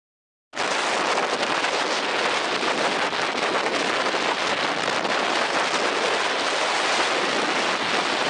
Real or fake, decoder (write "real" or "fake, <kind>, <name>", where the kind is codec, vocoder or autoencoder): real